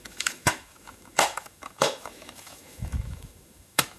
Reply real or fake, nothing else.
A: fake